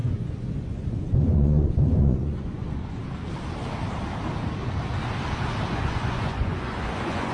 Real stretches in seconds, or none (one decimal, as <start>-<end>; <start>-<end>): 3.0-5.7